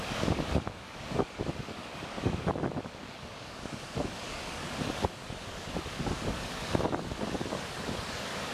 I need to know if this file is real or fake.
fake